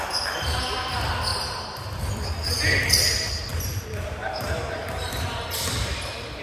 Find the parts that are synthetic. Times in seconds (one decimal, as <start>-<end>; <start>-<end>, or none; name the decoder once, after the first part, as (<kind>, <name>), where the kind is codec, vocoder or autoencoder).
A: 1.3-2.1 (vocoder, BigVGAN v2); 3.5-5.4

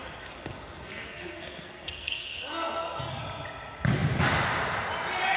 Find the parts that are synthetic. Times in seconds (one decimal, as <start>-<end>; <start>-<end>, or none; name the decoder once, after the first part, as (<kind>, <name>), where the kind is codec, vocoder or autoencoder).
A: 0.0-3.2 (codec, SNAC)